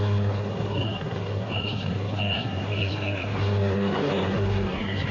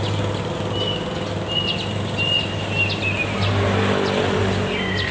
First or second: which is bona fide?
second